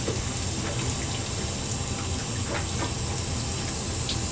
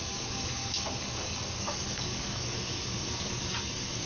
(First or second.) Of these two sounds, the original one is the first